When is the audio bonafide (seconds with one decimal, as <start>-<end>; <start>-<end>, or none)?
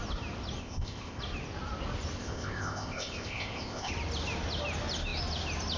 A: 0.0-0.6; 1.2-2.2; 3.9-5.8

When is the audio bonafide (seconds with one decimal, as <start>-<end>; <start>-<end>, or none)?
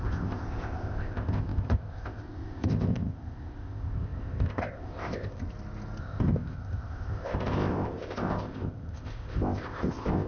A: 5.4-6.0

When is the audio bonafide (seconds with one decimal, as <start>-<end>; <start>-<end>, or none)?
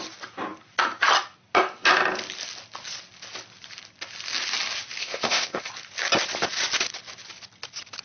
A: 0.0-5.0; 5.7-8.0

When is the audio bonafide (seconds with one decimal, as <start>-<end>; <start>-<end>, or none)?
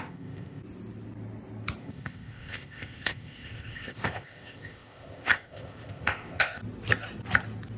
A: 0.6-1.8; 6.6-7.8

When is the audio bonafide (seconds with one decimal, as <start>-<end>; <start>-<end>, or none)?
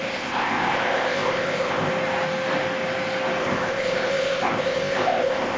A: 1.9-3.4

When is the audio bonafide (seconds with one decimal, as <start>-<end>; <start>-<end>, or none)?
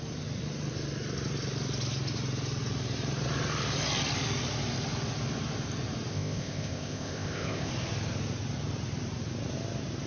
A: 0.0-6.1; 7.7-10.1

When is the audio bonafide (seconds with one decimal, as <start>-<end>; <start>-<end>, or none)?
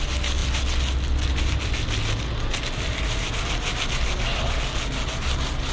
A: 0.0-5.7